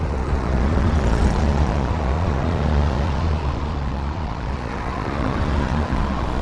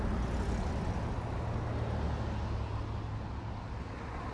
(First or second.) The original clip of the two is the second